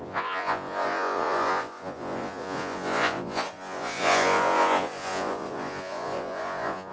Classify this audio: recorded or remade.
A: remade